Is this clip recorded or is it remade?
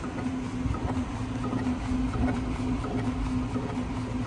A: recorded